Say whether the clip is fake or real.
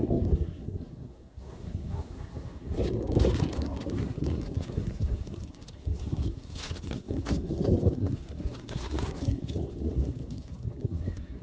fake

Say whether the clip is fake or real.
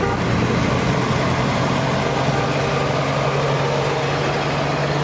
real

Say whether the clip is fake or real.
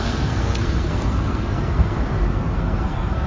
fake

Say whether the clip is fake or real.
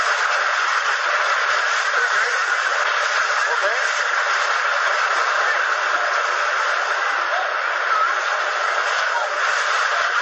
real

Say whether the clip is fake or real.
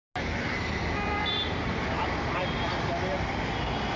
real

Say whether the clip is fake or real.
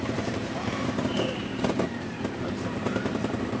fake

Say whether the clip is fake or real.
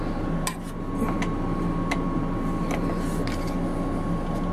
real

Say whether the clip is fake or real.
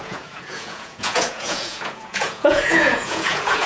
fake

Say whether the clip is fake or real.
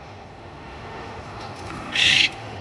fake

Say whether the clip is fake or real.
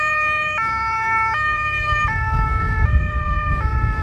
fake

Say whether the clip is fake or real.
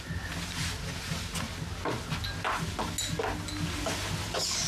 real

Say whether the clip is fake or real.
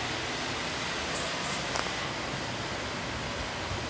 real